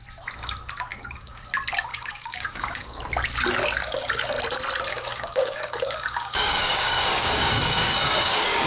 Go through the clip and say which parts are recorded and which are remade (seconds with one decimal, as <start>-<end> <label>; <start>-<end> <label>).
0.0-0.9 recorded; 0.9-1.4 remade; 1.4-1.9 recorded; 1.9-3.0 remade; 3.0-4.9 recorded; 4.9-8.7 remade